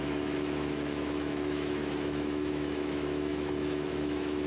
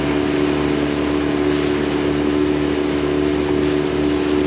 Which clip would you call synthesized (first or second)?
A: first